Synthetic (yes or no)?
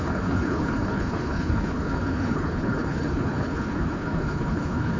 yes